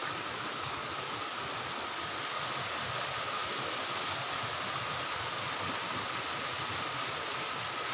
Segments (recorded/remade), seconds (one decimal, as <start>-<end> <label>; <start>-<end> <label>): 0.0-0.9 remade; 0.9-7.9 recorded